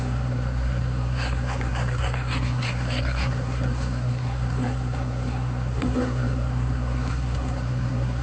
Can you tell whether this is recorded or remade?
remade